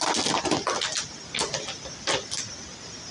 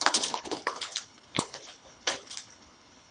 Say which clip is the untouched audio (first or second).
first